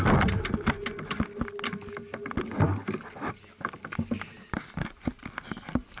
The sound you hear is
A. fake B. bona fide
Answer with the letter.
B